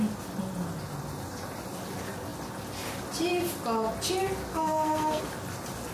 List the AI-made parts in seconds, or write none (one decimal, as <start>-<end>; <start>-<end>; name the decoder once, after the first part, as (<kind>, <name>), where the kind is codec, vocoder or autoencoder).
4.5-5.2 (codec, SNAC)